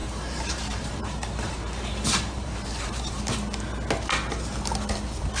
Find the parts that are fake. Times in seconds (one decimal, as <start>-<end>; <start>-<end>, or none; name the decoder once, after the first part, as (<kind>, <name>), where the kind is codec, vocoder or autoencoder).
0.0-3.2 (vocoder, BigVGAN v2)